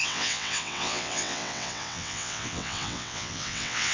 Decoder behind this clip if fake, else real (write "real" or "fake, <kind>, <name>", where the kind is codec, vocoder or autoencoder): fake, vocoder, WaveNeXt